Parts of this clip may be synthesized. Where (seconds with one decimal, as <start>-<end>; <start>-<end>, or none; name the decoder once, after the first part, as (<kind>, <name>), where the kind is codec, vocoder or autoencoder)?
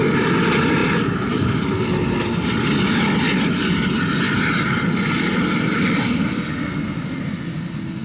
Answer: none